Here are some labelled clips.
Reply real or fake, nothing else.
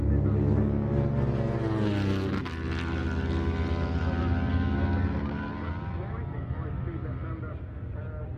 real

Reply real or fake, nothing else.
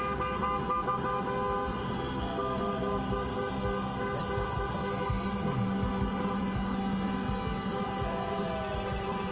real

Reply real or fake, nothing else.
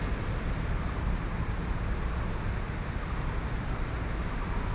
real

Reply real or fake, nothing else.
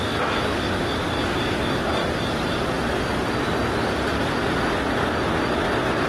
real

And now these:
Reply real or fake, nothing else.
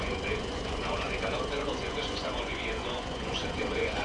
fake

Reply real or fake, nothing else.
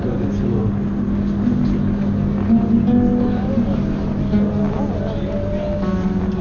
real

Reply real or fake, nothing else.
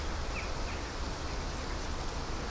real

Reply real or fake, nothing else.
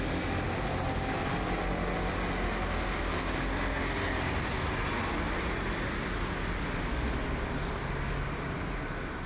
real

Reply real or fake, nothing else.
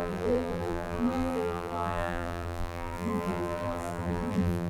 fake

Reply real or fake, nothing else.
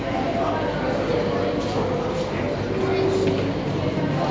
real